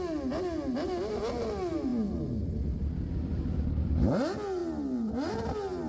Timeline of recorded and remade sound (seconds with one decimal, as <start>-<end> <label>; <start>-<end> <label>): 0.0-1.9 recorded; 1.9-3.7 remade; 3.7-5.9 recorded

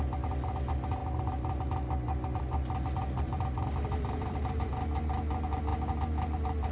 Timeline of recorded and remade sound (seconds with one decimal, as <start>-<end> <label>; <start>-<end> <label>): 0.0-3.0 recorded; 3.0-4.7 remade; 4.7-6.7 recorded

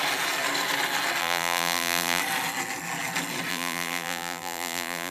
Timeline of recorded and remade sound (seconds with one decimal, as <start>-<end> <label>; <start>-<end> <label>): 0.0-1.2 recorded; 1.2-2.2 remade; 2.2-3.5 recorded; 3.5-5.1 remade

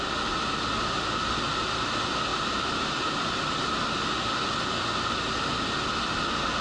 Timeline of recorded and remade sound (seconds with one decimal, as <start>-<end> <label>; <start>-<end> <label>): 0.0-2.3 recorded; 2.3-3.7 remade; 3.7-6.6 recorded

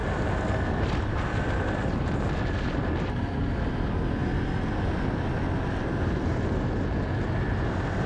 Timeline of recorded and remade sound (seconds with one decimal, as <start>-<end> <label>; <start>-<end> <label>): 0.0-8.1 recorded

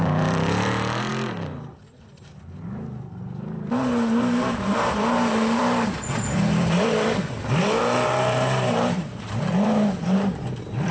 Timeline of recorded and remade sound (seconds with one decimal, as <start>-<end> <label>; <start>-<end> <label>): 0.0-5.6 remade; 5.6-6.4 recorded; 6.4-10.9 remade